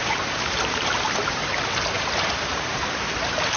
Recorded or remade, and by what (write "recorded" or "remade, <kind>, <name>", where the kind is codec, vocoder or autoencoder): remade, vocoder, BigVGAN v2